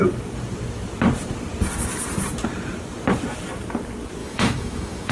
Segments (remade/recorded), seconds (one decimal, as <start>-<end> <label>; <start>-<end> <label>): 0.0-4.2 recorded; 4.2-5.1 remade